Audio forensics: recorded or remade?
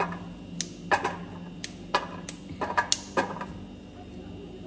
recorded